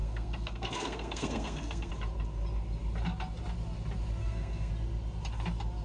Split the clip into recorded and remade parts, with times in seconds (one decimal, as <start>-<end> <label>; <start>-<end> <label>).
0.0-1.9 remade; 1.9-4.2 recorded; 4.2-4.7 remade; 4.7-5.8 recorded